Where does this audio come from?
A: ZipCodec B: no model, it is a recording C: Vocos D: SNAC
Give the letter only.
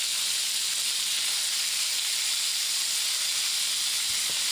B